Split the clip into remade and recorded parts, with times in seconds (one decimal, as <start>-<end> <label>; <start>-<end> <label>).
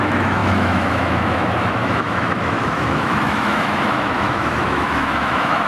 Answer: 0.0-5.7 remade